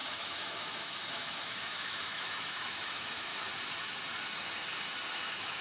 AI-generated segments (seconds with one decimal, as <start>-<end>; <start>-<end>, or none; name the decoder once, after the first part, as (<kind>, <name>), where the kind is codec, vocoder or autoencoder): 0.0-3.3 (autoencoder, DAC-VAE); 5.1-5.6